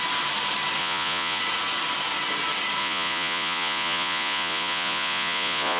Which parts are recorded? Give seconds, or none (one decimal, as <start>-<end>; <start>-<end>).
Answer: 0.0-0.8; 1.4-2.8